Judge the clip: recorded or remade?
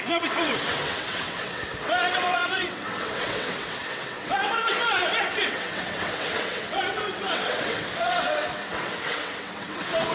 remade